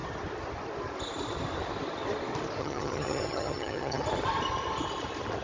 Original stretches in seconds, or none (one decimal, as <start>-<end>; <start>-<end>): 0.0-2.6; 4.0-5.4